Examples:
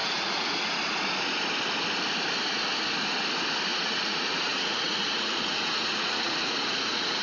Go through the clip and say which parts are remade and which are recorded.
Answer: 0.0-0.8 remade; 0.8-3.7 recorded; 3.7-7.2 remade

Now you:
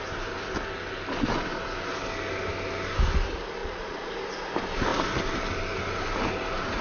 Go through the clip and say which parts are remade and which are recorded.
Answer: 0.0-3.6 recorded; 3.6-4.1 remade; 4.1-6.8 recorded

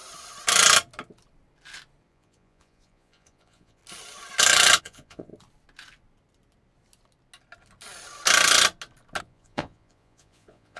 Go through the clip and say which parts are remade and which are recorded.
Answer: 0.0-2.1 recorded; 2.1-3.8 remade; 3.8-4.8 recorded; 4.8-5.3 remade; 5.3-9.2 recorded; 9.2-10.8 remade

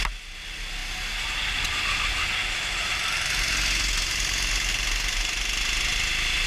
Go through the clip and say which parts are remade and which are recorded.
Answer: 0.0-6.5 recorded

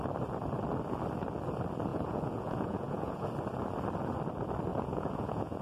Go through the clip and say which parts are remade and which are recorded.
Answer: 0.0-1.9 recorded; 1.9-3.3 remade; 3.3-4.7 recorded; 4.7-5.6 remade